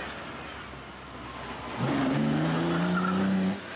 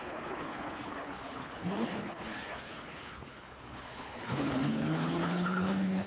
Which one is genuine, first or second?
first